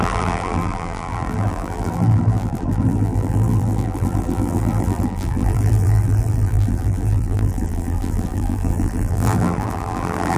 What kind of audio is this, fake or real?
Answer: fake